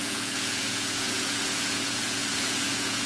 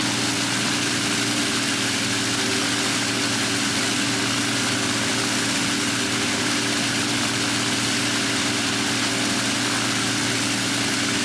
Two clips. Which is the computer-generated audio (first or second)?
first